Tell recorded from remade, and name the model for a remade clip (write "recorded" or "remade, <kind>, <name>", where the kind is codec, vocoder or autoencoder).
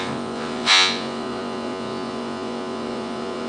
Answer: remade, vocoder, Vocos